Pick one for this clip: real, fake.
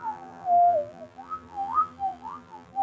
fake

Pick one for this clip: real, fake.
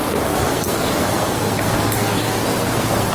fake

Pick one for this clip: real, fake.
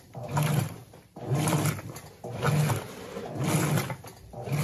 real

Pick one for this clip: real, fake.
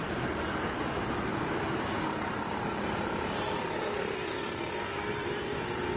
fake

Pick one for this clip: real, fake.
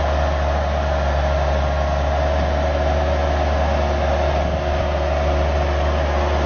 real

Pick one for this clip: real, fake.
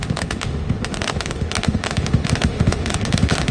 fake